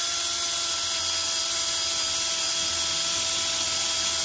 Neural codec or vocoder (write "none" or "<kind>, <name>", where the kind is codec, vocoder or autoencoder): none